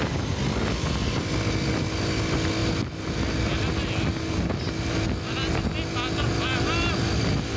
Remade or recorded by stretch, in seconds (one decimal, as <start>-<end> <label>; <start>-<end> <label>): 0.0-7.6 recorded